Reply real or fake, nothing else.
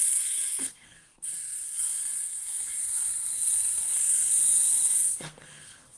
fake